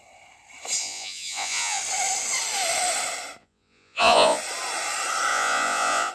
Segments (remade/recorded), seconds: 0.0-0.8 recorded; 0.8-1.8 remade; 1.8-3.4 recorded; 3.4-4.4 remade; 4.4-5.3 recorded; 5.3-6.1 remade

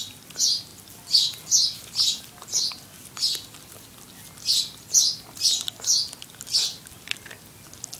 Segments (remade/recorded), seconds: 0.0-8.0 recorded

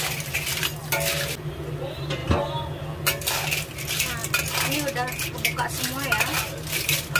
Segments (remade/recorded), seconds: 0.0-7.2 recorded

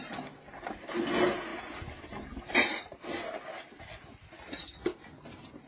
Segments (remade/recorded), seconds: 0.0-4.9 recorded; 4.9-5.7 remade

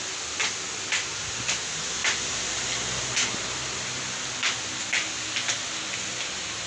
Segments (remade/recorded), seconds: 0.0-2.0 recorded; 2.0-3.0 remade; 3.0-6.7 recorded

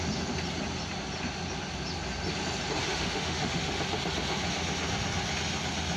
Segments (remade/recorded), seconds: 0.0-2.8 recorded; 2.8-3.7 remade; 3.7-6.0 recorded